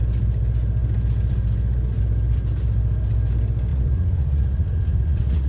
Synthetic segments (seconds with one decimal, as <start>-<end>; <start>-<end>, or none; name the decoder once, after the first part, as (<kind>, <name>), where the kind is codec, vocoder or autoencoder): 3.7-5.5 (vocoder, Vocos)